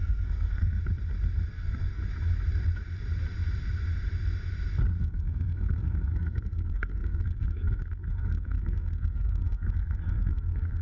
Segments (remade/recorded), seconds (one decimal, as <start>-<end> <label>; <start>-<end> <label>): 0.0-0.8 remade; 0.8-1.5 recorded; 1.5-2.0 remade; 2.0-5.0 recorded; 5.0-10.8 remade